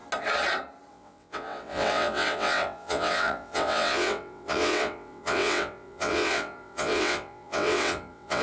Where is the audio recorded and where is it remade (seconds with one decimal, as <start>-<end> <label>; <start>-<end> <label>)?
0.0-0.9 recorded; 0.9-8.4 remade

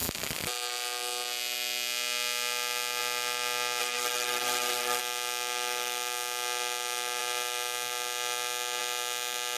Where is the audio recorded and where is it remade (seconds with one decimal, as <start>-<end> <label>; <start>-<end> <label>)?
0.0-3.8 recorded; 3.8-5.0 remade; 5.0-9.6 recorded

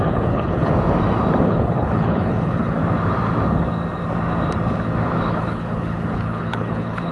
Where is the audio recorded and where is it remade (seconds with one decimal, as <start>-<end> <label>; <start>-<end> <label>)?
0.0-0.7 remade; 0.7-1.4 recorded; 1.4-2.8 remade; 2.8-5.3 recorded; 5.3-7.1 remade